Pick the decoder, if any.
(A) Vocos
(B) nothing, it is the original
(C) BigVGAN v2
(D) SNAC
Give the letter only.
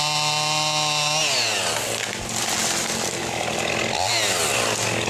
B